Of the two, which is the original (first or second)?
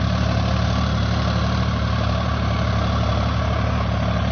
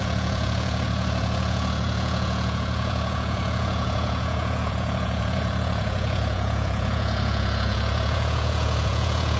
first